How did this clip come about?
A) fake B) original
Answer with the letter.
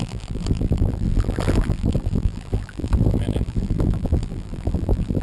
A